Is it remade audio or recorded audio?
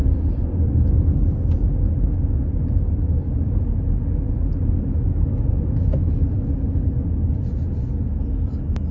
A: recorded